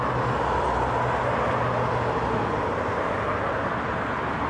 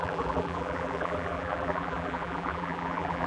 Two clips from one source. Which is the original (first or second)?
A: first